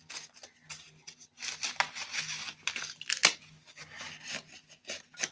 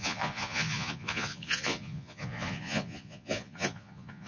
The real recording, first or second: first